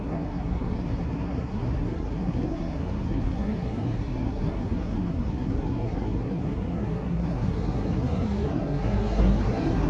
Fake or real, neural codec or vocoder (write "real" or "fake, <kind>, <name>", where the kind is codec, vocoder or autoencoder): fake, codec, SNAC